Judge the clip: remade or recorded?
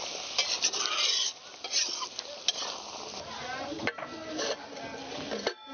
recorded